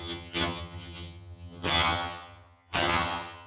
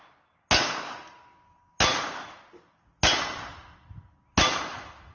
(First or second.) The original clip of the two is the second